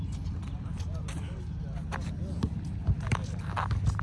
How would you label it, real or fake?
real